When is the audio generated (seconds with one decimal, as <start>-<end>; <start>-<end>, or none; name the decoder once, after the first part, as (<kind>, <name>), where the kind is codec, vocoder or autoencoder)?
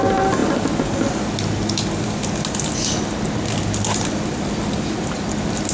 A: none